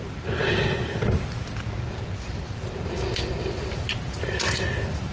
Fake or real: real